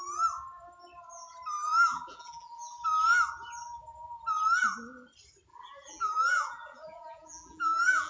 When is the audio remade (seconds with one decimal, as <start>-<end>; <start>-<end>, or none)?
1.7-2.6; 5.5-8.1